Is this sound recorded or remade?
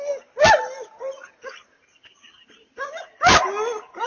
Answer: recorded